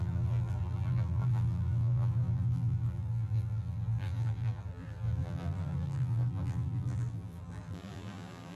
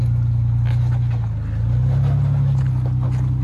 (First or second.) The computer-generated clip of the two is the first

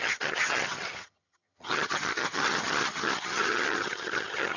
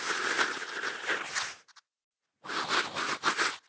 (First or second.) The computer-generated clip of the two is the first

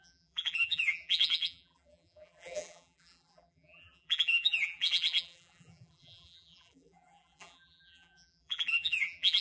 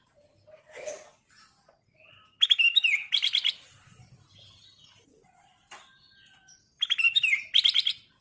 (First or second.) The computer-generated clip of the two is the first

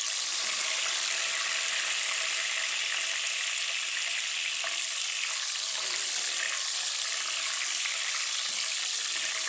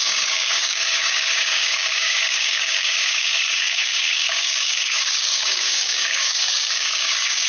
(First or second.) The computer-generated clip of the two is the second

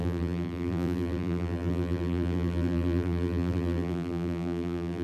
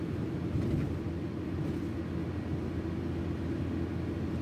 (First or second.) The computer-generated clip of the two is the first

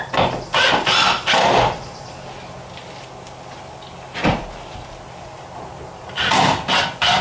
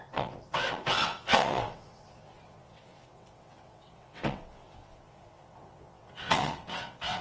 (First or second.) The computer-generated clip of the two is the second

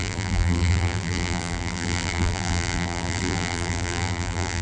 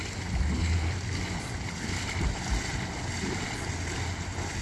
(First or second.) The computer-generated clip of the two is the first